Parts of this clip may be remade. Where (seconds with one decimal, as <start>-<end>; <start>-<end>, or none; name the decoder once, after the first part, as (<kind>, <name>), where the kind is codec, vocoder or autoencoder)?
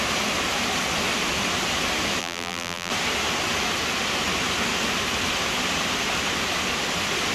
2.2-2.9 (vocoder, BigVGAN v2)